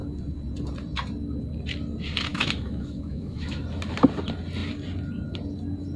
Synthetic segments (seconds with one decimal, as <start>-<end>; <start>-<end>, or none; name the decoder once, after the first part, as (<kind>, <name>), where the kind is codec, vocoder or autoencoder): 2.3-3.6 (autoencoder, DAC-VAE)